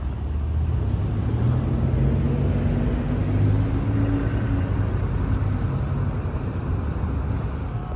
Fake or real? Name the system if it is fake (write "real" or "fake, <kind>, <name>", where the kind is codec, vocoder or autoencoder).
real